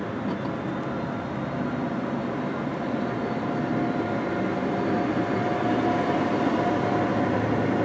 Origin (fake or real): real